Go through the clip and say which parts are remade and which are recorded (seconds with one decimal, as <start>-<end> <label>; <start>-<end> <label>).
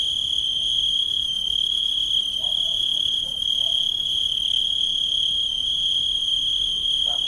0.0-0.7 recorded; 0.7-2.1 remade; 2.1-2.8 recorded; 2.8-3.5 remade; 3.5-6.2 recorded; 6.2-7.3 remade